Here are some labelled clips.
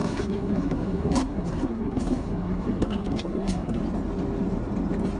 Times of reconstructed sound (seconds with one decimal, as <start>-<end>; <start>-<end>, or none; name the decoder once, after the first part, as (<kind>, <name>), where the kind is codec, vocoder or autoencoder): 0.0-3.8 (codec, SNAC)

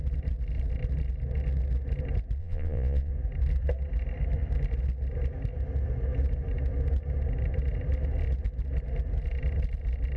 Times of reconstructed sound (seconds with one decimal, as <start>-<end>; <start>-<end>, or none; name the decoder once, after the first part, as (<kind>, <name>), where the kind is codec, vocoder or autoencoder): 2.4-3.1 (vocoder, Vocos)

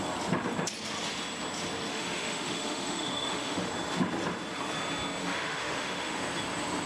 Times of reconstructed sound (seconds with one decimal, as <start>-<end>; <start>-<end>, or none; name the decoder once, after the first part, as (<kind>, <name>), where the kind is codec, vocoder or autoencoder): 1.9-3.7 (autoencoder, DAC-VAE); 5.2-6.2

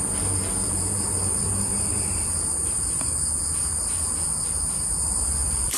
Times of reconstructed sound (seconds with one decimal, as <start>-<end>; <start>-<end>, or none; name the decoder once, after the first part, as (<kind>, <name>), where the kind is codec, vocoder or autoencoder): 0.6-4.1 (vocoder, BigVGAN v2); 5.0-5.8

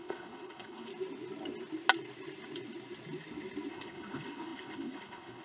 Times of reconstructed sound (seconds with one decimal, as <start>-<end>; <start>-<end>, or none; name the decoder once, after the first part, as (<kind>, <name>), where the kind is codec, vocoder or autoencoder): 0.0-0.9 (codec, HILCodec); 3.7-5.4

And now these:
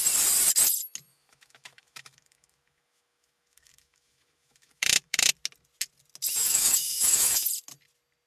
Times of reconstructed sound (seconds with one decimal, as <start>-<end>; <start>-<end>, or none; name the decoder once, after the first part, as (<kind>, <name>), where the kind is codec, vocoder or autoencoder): 1.1-5.3 (autoencoder, DAC-VAE); 6.4-7.5

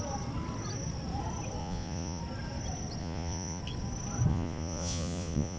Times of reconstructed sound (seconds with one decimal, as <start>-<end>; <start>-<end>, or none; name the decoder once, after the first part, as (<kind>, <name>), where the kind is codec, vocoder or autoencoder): 1.6-2.2 (vocoder, Vocos); 3.0-3.6; 4.3-5.6

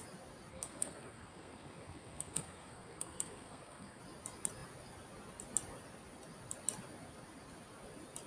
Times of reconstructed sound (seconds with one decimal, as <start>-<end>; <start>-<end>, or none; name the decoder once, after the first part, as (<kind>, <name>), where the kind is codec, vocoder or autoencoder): 0.5-4.0 (codec, SNAC)